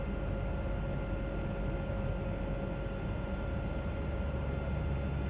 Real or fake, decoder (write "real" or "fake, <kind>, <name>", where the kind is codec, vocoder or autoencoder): real